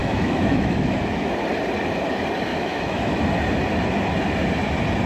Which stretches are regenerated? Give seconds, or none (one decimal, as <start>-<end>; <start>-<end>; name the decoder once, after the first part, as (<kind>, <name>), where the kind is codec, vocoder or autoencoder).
0.0-1.3 (autoencoder, DAC-VAE); 2.5-3.2